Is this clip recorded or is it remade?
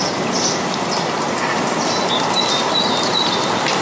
recorded